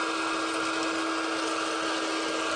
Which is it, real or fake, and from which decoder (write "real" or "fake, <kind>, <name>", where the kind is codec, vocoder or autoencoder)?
real